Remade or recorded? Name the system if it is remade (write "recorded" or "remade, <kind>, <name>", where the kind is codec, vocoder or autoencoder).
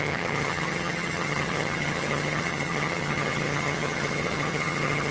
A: remade, vocoder, HiFi-GAN